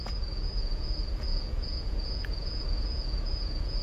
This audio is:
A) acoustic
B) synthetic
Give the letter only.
B